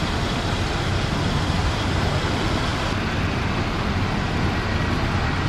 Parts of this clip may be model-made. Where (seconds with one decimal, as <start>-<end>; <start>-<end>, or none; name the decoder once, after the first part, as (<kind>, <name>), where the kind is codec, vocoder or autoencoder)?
1.6-2.1 (vocoder, BigVGAN v2)